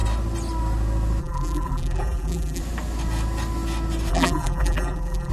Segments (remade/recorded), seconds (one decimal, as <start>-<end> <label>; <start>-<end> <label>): 0.0-1.2 recorded; 1.2-2.6 remade; 2.6-4.1 recorded; 4.1-5.3 remade